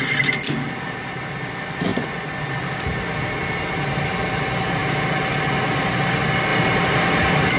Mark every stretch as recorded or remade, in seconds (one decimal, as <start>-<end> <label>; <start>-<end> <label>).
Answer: 0.0-1.9 recorded; 1.9-2.4 remade; 2.4-7.6 recorded

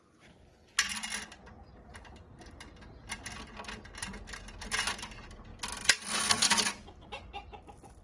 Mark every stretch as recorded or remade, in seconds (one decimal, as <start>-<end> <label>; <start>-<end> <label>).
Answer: 0.0-8.0 recorded

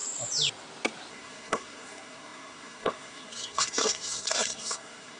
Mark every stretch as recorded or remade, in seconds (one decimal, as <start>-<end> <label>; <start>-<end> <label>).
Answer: 0.0-1.1 recorded; 1.1-5.2 remade

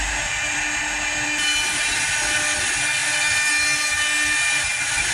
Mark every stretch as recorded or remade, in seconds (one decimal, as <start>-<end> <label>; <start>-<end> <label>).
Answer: 0.0-5.1 recorded

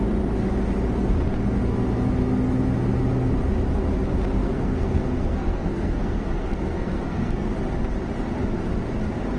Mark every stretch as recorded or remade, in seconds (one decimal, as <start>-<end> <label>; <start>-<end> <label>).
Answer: 0.0-4.4 recorded; 4.4-7.5 remade; 7.5-9.4 recorded

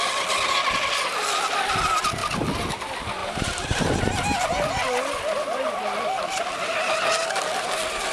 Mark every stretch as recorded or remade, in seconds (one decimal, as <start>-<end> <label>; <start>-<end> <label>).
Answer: 0.0-3.2 recorded; 3.2-3.8 remade; 3.8-8.1 recorded